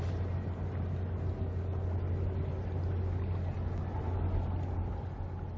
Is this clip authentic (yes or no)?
yes